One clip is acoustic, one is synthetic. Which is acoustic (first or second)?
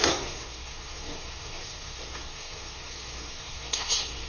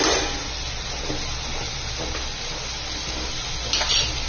second